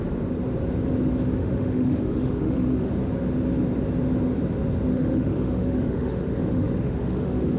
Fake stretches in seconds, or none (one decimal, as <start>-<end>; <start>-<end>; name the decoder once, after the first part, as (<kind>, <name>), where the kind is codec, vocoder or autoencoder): 1.4-2.9 (autoencoder, DAC-VAE); 4.9-7.6

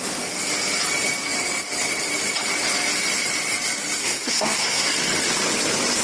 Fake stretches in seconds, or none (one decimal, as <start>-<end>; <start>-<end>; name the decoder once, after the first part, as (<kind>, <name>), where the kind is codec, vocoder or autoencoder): 4.0-4.9 (codec, SNAC)

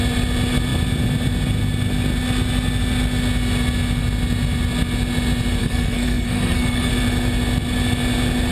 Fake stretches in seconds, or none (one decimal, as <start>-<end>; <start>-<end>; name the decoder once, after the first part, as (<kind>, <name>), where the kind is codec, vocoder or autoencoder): 5.6-6.9 (codec, SNAC)